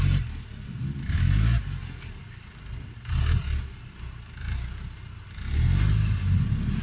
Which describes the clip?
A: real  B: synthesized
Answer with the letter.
A